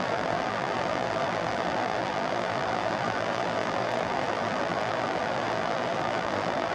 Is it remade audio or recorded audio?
remade